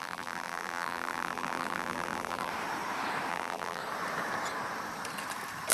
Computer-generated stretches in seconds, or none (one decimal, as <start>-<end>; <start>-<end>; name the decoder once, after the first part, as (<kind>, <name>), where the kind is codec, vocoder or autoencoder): 0.0-2.5 (vocoder, BigVGAN v2); 3.3-3.8

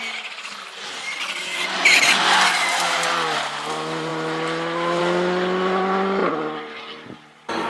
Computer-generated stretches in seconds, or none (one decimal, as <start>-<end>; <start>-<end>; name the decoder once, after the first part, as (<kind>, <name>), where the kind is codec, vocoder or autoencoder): none

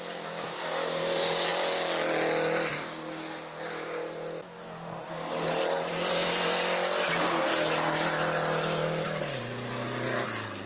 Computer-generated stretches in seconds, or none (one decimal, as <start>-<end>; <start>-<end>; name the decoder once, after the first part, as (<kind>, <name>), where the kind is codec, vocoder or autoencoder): none

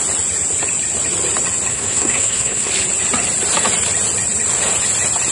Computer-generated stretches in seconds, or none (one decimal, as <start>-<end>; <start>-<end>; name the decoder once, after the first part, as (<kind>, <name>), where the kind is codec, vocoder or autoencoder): 1.7-2.7 (codec, SNAC)

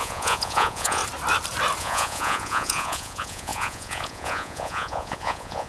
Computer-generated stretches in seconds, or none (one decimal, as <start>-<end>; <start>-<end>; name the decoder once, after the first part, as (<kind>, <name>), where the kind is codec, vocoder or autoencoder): 0.0-1.0 (vocoder, Vocos); 1.8-5.7

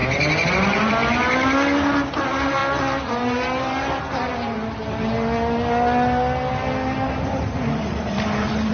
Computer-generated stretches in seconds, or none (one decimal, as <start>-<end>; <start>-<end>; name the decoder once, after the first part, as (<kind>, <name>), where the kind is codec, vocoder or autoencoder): 0.5-1.0 (vocoder, BigVGAN v2); 2.1-2.6; 3.1-4.3; 7.6-8.7

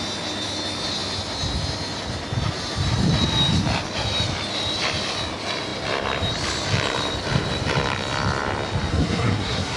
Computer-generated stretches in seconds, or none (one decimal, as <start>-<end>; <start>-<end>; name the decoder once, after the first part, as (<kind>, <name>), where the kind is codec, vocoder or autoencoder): 8.9-9.8 (codec, SNAC)